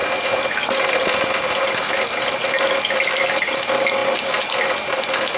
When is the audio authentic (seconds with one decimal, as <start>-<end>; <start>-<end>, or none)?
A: 0.0-5.4